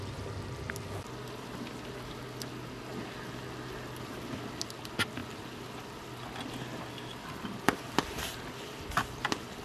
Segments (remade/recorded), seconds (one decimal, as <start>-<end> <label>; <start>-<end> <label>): 0.0-9.6 recorded